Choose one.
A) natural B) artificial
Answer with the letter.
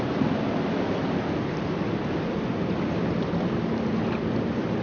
A